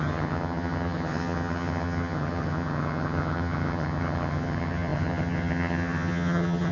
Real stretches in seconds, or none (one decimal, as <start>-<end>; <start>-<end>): none